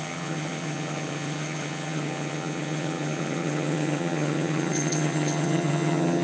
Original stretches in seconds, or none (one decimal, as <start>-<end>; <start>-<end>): none